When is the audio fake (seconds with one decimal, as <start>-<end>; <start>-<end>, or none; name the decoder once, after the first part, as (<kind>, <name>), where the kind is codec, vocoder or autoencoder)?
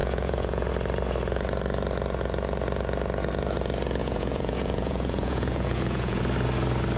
0.0-0.7 (vocoder, Vocos); 4.0-6.2